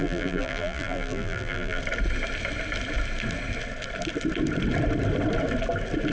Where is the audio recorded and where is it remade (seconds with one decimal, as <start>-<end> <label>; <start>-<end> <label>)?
0.0-1.8 remade; 1.8-6.1 recorded